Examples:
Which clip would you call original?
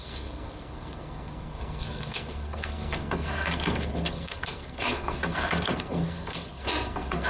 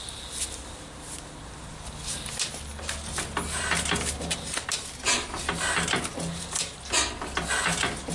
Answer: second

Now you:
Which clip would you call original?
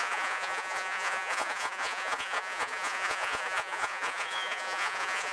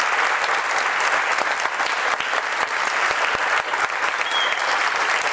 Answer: second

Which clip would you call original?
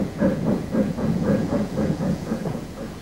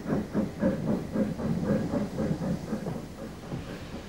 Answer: second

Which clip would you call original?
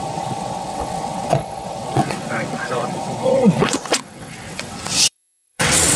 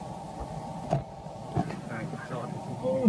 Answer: second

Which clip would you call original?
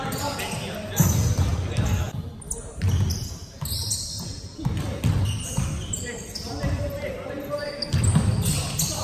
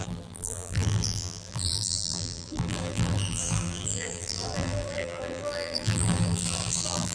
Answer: first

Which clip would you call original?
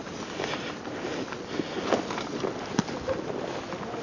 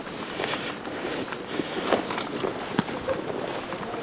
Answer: first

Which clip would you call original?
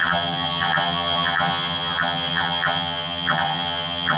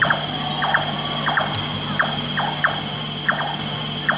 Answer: second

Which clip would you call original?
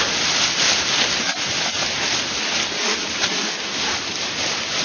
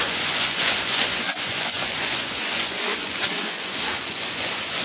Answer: first